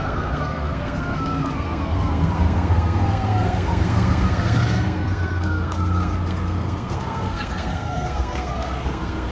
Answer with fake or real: fake